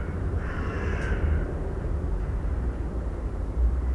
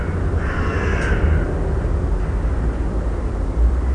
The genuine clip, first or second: second